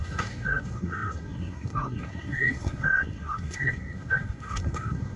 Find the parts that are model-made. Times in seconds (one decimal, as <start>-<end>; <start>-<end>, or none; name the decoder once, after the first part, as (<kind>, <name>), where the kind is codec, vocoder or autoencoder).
0.0-5.2 (codec, SNAC)